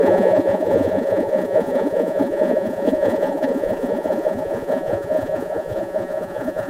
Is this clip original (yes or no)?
no